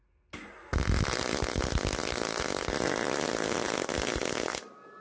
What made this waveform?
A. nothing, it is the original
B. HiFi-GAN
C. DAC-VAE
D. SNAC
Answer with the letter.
A